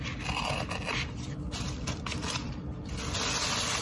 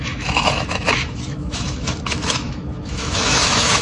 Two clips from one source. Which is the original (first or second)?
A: first